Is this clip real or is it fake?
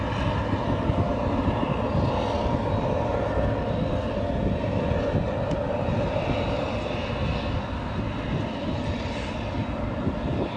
real